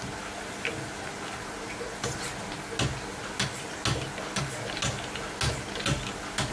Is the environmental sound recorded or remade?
recorded